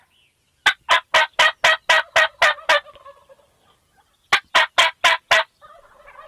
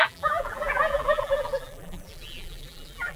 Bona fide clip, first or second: first